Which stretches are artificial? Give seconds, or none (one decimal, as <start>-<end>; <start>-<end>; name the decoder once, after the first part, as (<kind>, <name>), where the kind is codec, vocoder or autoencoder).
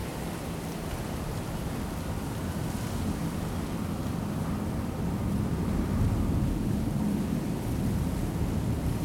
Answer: 0.0-1.8 (vocoder, BigVGAN v2)